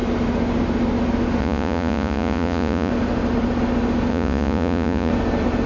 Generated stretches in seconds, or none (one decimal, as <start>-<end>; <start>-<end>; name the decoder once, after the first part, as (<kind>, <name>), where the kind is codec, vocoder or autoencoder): 1.4-2.9 (vocoder, Vocos); 4.1-5.1